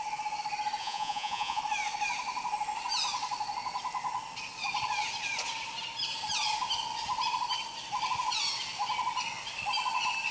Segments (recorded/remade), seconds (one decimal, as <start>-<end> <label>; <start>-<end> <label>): 0.0-0.8 recorded; 0.8-1.6 remade; 1.6-10.3 recorded